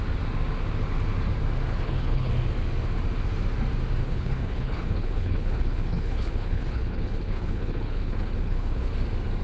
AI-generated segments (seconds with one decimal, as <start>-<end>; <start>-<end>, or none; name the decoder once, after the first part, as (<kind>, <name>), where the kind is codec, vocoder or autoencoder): 1.7-2.3 (codec, HILCodec); 4.0-8.9